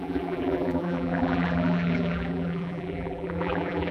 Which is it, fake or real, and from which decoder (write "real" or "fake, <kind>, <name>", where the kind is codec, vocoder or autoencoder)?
fake, vocoder, BigVGAN v2